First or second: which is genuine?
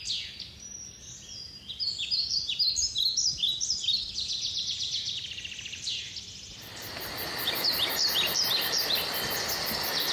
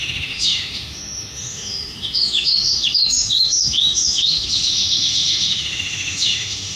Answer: first